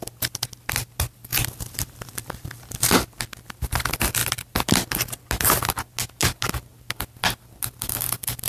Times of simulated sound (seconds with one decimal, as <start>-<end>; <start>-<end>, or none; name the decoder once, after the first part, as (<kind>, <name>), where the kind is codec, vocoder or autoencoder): 1.3-2.9 (vocoder, BigVGAN v2)